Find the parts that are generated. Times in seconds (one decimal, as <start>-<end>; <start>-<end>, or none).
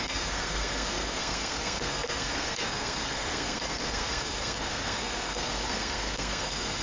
0.0-6.8